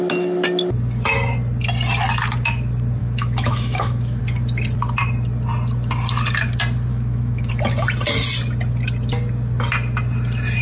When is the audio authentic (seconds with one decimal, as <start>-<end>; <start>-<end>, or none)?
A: 0.0-3.0; 4.2-6.9; 7.5-10.6